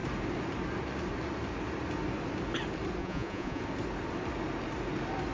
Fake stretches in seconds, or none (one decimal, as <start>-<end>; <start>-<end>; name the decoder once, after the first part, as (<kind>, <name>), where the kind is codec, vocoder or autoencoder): 3.0-3.6 (vocoder, Vocos)